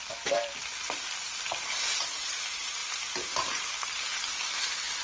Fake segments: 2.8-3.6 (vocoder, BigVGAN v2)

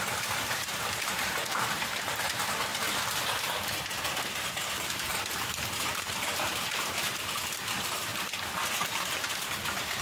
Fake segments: 0.0-2.7 (vocoder, BigVGAN v2); 4.5-8.1; 9.2-10.0

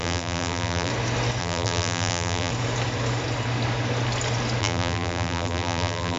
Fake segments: 0.0-0.9 (vocoder, BigVGAN v2); 1.4-2.5; 4.6-6.2